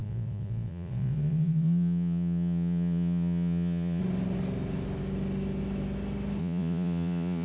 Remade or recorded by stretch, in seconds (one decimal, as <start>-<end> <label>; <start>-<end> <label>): 0.0-4.0 remade; 4.0-6.4 recorded; 6.4-7.4 remade